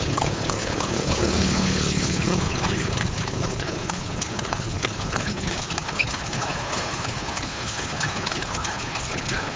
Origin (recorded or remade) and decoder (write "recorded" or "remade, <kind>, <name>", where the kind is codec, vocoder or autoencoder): remade, codec, HILCodec